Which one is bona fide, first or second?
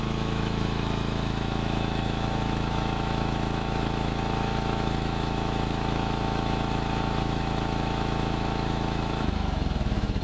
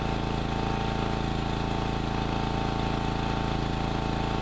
second